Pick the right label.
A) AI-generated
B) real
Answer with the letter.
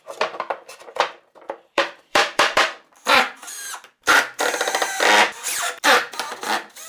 A